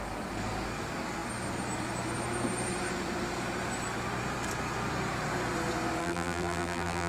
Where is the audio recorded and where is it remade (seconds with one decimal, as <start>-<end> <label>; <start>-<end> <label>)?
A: 0.0-6.0 recorded; 6.0-7.1 remade